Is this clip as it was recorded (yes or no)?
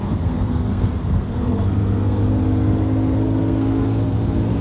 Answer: no